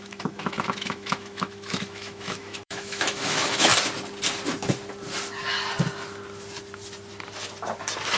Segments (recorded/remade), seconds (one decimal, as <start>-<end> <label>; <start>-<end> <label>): 0.0-3.7 remade; 3.7-8.2 recorded